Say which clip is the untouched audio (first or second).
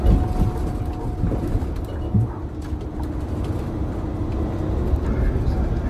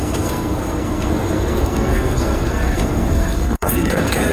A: first